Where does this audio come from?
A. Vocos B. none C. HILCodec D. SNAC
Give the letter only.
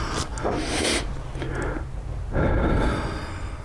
B